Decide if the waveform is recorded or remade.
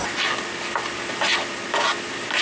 recorded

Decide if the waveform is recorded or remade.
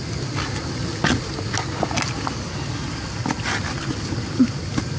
recorded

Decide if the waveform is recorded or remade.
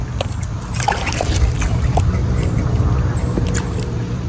recorded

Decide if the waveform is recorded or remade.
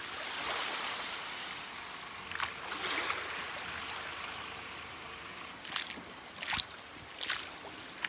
recorded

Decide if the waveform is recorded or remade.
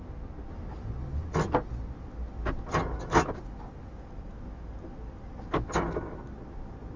recorded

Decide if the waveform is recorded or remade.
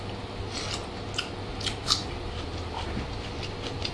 recorded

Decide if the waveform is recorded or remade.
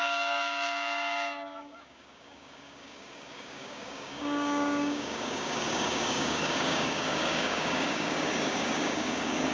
remade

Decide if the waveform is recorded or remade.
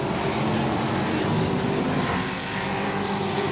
recorded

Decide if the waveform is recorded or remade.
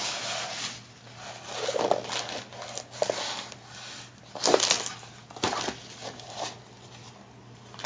recorded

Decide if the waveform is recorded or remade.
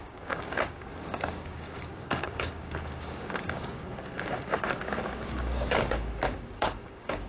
remade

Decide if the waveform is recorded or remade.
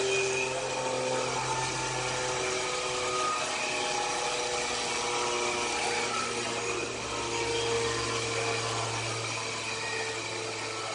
recorded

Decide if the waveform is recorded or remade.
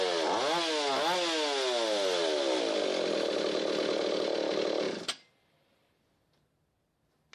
recorded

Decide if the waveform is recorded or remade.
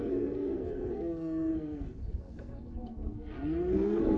remade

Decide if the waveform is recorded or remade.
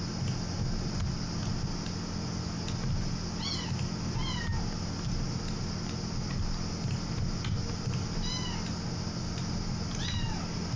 recorded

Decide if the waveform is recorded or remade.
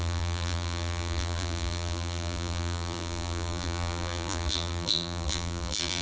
remade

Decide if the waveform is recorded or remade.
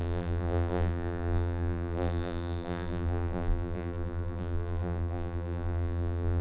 remade